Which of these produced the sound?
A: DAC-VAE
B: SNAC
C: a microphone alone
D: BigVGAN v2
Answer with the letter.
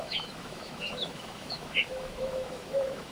A